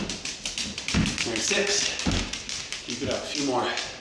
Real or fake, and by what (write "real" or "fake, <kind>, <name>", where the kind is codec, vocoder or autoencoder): real